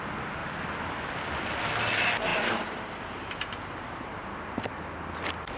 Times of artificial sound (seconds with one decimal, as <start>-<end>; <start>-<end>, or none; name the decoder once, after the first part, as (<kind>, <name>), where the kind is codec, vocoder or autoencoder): 0.4-1.5 (vocoder, BigVGAN v2); 2.3-5.1